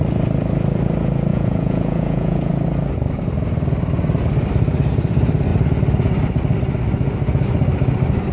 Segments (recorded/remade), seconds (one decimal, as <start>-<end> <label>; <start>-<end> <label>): 0.0-1.3 recorded; 1.3-2.5 remade; 2.5-8.3 recorded